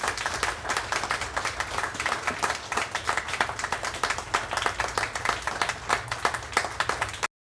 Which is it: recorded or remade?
recorded